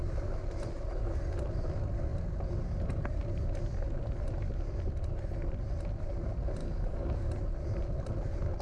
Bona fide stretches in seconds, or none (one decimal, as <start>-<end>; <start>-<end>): 0.0-6.6; 7.3-8.6

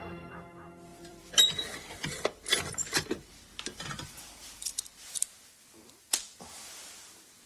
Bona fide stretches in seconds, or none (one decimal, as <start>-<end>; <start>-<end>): 0.0-0.9; 5.1-7.5